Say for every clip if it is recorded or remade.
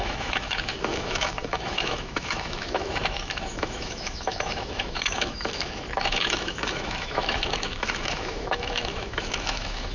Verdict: remade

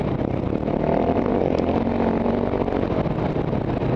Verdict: recorded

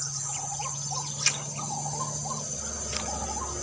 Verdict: recorded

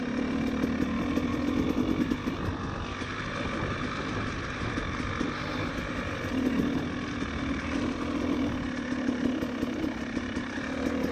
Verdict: recorded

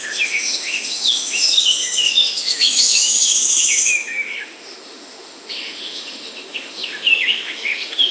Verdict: remade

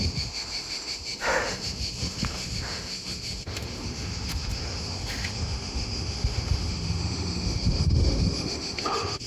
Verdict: remade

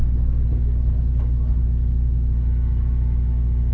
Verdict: recorded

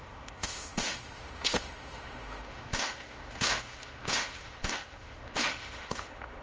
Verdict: remade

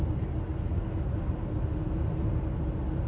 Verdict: recorded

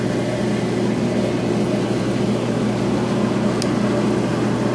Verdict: recorded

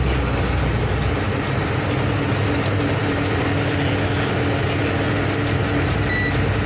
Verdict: recorded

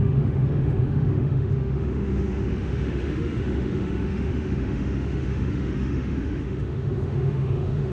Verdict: remade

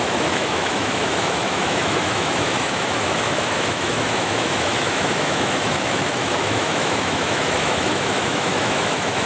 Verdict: remade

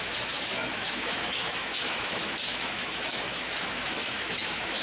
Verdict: remade